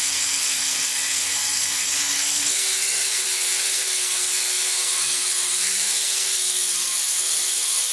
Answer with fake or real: fake